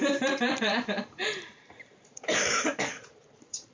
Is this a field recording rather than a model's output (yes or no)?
no